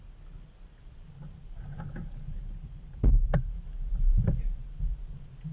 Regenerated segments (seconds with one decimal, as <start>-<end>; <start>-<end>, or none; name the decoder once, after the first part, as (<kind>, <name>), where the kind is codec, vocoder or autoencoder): 1.4-4.7 (vocoder, BigVGAN v2)